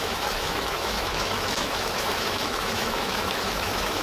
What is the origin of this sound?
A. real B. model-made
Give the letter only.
B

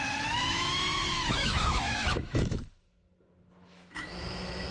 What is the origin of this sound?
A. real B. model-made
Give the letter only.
B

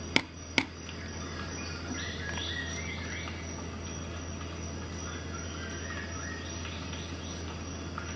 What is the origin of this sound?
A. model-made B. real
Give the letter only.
B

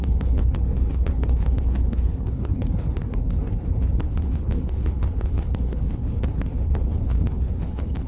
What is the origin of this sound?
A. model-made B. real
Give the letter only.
A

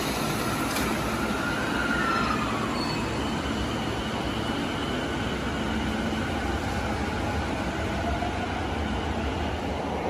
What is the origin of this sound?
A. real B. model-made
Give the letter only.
A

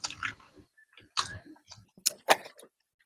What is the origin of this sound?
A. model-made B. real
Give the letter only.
B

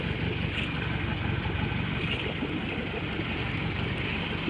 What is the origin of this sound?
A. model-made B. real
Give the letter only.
B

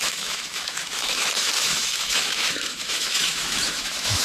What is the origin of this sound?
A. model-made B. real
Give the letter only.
A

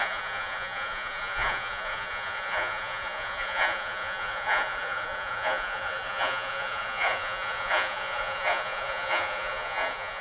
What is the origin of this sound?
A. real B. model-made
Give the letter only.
B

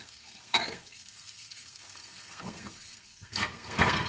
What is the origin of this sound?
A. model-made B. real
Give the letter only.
A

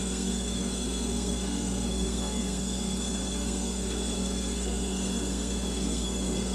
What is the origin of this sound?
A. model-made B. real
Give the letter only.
A